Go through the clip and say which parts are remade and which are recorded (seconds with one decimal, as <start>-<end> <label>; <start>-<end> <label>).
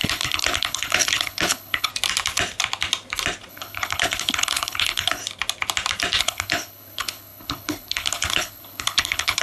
0.0-1.9 remade; 1.9-3.5 recorded; 3.5-5.2 remade; 5.2-6.2 recorded; 6.2-9.4 remade